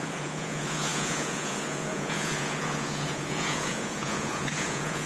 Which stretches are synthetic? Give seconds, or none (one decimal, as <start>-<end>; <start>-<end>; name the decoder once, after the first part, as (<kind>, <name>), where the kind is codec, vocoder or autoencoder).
0.0-5.1 (vocoder, Vocos)